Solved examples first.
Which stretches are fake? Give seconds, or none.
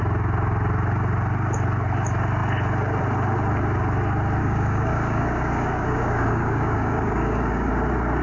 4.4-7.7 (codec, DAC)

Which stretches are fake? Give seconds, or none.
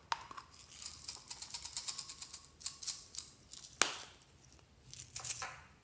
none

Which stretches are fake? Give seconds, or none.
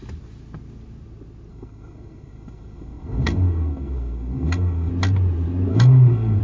1.5-4.9 (codec, SNAC); 5.7-6.4